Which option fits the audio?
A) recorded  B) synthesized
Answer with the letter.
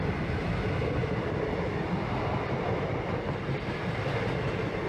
A